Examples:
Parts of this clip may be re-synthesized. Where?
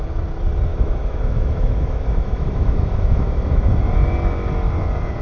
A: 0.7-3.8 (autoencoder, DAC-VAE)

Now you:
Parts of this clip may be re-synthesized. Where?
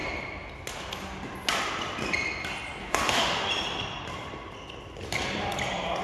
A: 2.8-3.5 (autoencoder, DAC-VAE)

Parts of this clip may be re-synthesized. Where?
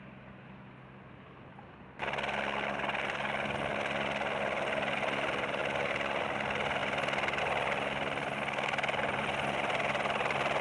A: none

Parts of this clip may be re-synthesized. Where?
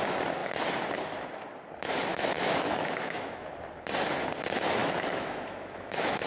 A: 2.1-3.5 (autoencoder, DAC-VAE); 4.8-6.3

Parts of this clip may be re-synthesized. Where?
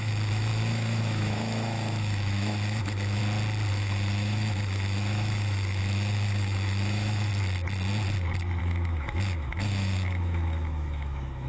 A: 0.0-3.2 (autoencoder, DAC-VAE); 3.7-7.3; 8.6-11.5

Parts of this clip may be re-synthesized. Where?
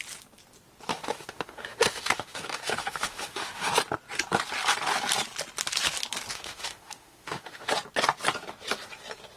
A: 0.9-3.7 (autoencoder, DAC-VAE); 6.3-7.7